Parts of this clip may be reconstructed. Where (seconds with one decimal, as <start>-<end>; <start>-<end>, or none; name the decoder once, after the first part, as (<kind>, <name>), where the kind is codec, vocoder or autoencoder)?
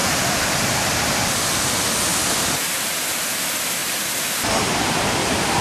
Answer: 0.0-0.8 (vocoder, BigVGAN v2); 2.1-2.8; 3.8-4.9